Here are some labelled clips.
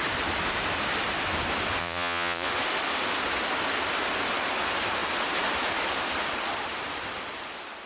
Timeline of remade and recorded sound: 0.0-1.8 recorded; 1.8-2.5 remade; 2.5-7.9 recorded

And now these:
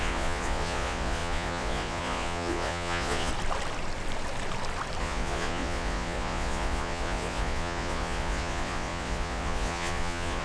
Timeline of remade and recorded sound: 0.0-3.3 remade; 3.3-5.0 recorded; 5.0-10.4 remade